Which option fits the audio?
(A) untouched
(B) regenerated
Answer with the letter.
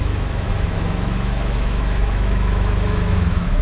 B